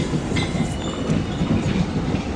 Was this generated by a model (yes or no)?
no